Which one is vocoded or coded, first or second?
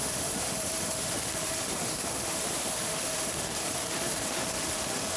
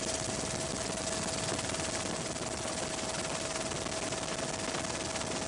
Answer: first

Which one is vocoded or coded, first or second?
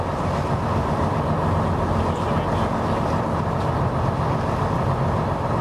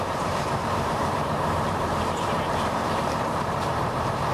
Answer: second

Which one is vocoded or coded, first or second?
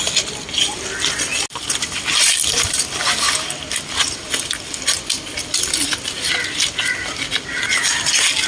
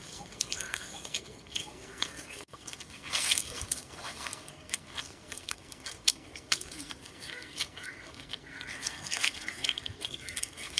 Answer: second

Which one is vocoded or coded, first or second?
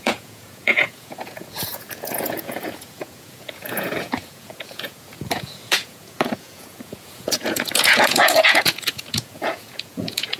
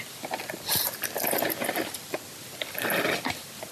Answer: first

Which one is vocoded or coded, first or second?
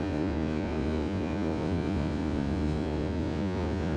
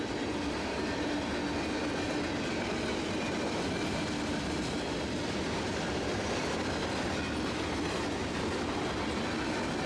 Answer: first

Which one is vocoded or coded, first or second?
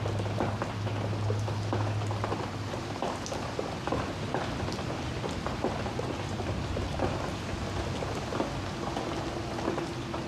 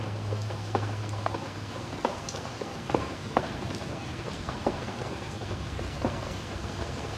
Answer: second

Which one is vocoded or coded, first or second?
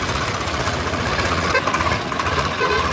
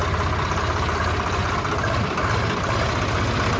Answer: first